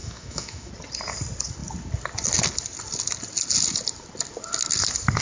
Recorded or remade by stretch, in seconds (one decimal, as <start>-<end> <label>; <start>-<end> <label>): 0.0-0.7 remade; 0.7-5.2 recorded